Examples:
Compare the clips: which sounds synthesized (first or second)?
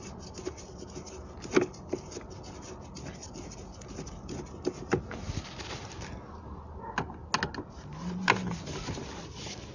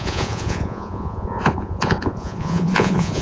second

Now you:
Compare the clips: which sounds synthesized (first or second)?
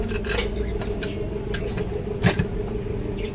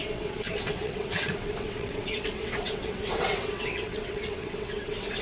second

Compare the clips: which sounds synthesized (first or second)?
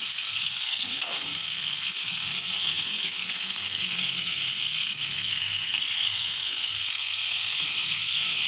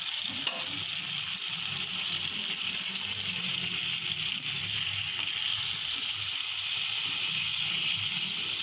first